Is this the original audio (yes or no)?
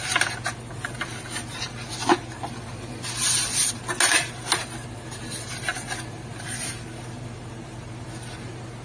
yes